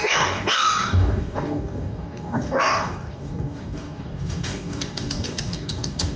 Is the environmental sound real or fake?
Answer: fake